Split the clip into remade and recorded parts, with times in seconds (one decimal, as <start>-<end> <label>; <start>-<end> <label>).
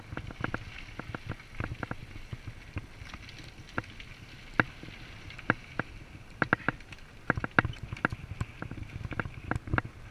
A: 0.0-10.1 recorded